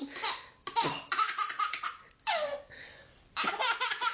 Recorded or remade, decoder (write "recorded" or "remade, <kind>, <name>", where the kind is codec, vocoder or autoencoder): recorded